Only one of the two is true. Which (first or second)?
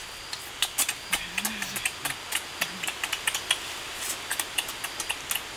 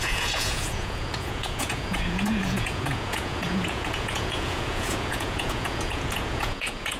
first